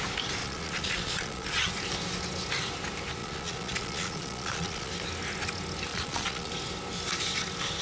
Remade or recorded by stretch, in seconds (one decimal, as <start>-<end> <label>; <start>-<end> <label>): 0.0-0.4 recorded; 0.4-1.7 remade; 1.7-3.2 recorded; 3.2-4.9 remade; 4.9-5.9 recorded; 5.9-6.5 remade; 6.5-7.8 recorded